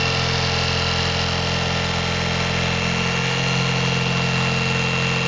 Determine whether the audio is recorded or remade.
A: recorded